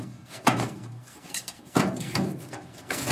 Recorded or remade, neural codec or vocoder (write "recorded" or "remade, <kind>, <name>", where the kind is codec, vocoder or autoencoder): remade, codec, SNAC